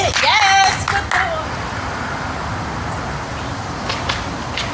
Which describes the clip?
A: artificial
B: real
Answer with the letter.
B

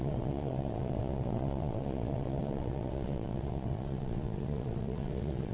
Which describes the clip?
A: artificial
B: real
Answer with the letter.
A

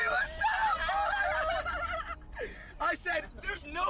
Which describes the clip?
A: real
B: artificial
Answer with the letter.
A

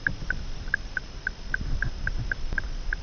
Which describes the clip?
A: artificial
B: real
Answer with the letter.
B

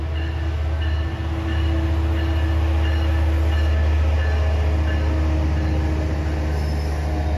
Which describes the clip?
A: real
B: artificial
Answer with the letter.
A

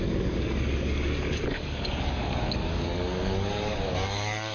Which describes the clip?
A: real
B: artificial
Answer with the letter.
B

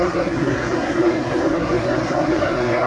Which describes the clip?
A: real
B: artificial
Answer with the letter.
B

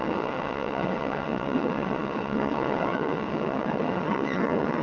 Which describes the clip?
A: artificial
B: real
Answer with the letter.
A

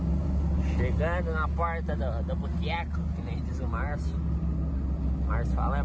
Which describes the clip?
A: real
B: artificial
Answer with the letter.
A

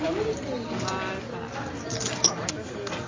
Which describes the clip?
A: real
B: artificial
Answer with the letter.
A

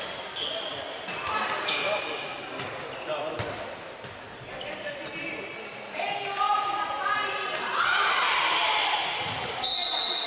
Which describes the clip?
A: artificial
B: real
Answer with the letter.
B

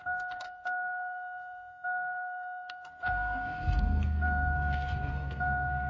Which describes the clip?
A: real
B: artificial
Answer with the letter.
B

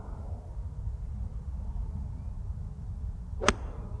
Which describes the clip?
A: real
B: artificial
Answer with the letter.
A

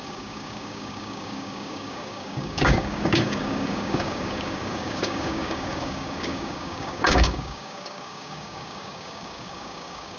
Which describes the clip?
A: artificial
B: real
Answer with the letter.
A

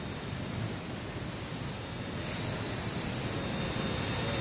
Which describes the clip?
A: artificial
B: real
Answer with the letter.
B